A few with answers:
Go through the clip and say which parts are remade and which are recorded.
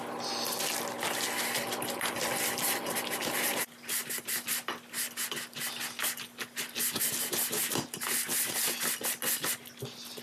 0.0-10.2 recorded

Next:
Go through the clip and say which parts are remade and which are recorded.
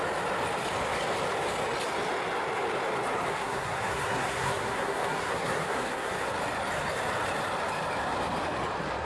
0.0-3.3 recorded; 3.3-6.3 remade; 6.3-9.0 recorded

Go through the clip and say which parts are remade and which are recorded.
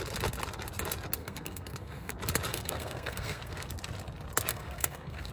0.0-1.2 recorded; 1.2-2.1 remade; 2.1-2.5 recorded; 2.5-3.7 remade; 3.7-4.5 recorded; 4.5-5.3 remade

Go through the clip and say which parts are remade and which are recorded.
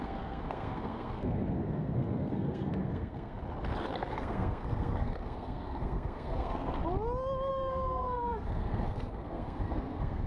0.0-3.4 remade; 3.4-4.1 recorded; 4.1-6.8 remade; 6.8-7.5 recorded; 7.5-10.3 remade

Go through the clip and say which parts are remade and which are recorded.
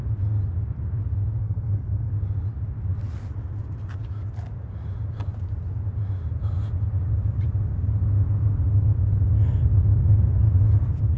0.0-1.4 recorded; 1.4-2.1 remade; 2.1-11.2 recorded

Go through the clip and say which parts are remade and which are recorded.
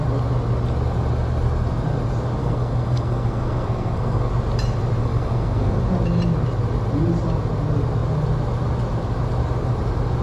0.0-2.4 recorded; 2.4-4.3 remade; 4.3-5.0 recorded; 5.0-5.8 remade; 5.8-10.2 recorded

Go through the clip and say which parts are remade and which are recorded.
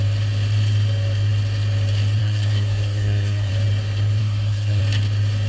0.0-2.2 recorded; 2.2-3.5 remade; 3.5-4.2 recorded; 4.2-4.8 remade; 4.8-5.5 recorded